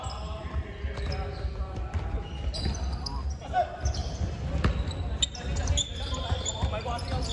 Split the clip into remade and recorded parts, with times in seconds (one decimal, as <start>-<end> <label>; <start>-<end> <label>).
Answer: 0.0-7.3 recorded